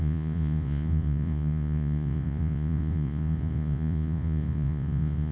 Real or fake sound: fake